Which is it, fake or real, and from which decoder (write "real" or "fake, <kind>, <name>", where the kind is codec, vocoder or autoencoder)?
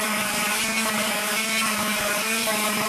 fake, codec, DAC